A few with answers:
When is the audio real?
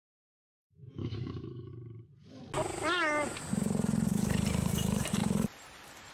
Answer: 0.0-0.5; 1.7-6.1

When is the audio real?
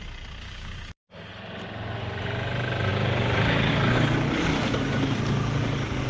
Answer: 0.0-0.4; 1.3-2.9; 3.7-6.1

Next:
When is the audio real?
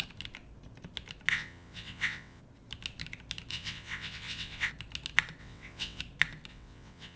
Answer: 0.0-1.3; 2.4-3.5; 4.7-5.4; 6.0-6.5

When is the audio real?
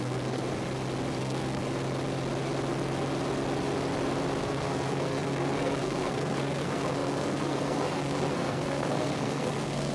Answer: 0.4-1.2; 1.6-4.4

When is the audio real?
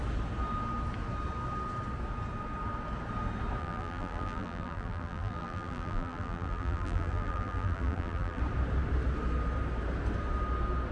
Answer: 0.0-3.6; 8.4-10.9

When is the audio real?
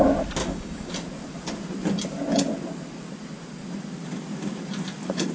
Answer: 0.0-0.4; 0.9-5.3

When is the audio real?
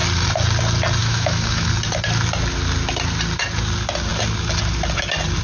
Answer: 0.0-1.0; 1.7-5.4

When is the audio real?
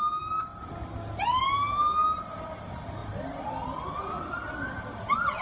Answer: 0.0-5.4